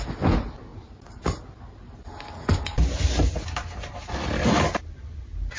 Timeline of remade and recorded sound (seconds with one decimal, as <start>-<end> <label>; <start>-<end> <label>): 0.0-5.6 recorded